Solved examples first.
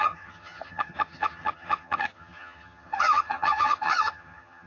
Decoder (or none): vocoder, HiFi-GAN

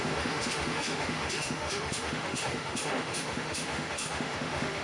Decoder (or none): autoencoder, DAC-VAE